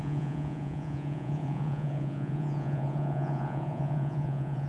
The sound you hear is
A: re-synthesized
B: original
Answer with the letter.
A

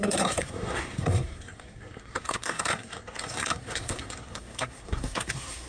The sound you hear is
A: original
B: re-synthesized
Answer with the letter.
B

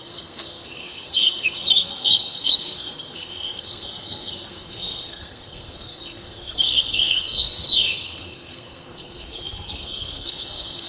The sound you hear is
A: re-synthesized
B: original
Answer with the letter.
A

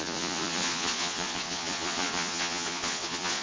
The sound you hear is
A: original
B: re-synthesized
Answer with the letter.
B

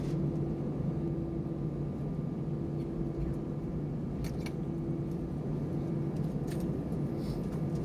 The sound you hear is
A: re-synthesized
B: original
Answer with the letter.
B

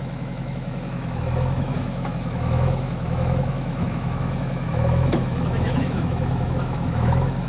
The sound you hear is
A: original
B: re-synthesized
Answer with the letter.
B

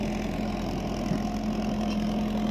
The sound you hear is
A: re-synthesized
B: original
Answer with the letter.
B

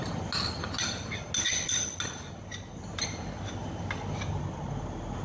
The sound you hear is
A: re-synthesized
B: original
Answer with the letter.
B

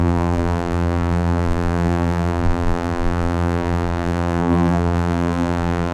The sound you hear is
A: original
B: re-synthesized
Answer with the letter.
B